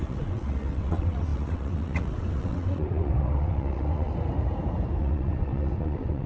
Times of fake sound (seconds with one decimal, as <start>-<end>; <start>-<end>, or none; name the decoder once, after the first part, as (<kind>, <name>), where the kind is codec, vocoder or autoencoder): 0.0-4.1 (vocoder, WaveNeXt); 5.0-6.3